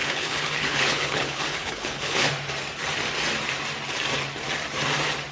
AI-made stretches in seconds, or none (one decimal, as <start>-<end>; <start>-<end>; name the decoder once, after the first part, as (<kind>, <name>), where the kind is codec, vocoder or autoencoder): 0.0-2.3 (codec, HILCodec)